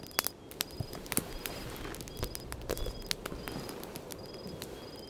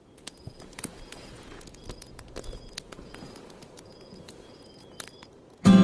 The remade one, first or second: second